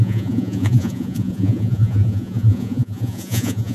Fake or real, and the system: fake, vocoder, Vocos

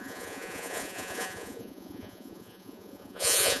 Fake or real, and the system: fake, vocoder, Vocos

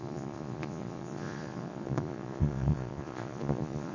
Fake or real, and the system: fake, vocoder, Vocos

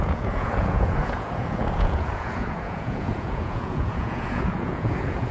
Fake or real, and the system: fake, vocoder, Vocos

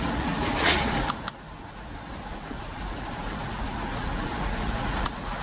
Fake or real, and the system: fake, vocoder, Vocos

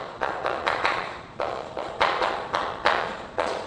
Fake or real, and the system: fake, vocoder, Vocos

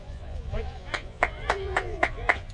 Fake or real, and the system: fake, vocoder, Vocos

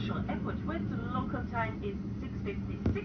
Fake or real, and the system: real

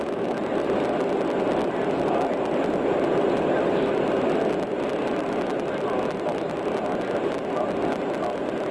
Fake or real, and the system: real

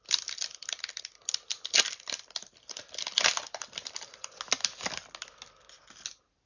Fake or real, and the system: real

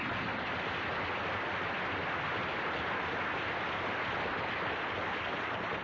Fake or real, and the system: real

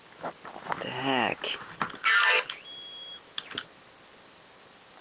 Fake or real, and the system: real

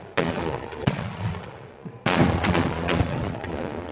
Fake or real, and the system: fake, vocoder, Vocos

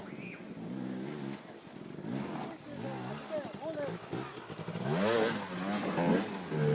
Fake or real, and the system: real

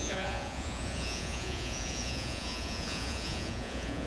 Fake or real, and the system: fake, vocoder, Vocos